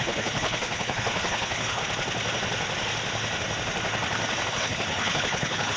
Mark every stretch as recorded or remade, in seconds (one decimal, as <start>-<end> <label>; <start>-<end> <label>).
0.0-1.8 remade; 1.8-4.5 recorded; 4.5-5.8 remade